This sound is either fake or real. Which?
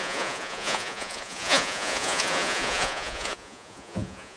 fake